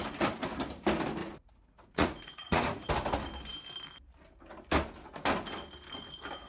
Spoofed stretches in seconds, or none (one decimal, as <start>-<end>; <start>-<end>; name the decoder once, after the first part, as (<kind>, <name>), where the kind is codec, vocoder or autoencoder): 1.2-2.9 (vocoder, Vocos)